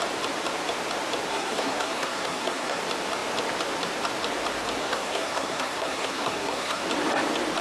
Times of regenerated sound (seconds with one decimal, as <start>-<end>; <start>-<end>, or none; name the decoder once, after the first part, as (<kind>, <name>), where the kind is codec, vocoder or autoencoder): 1.3-2.8 (codec, SNAC); 4.8-6.8